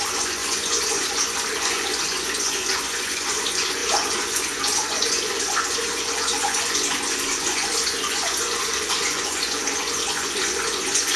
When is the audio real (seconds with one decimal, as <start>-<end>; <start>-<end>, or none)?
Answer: none